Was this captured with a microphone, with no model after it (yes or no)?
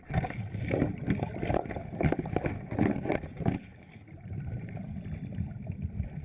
yes